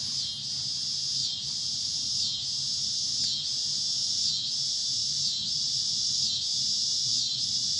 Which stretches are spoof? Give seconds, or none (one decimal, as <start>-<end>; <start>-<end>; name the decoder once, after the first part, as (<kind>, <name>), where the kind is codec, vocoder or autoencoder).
1.2-2.1 (vocoder, Vocos); 4.0-4.6; 5.0-6.3; 7.1-7.8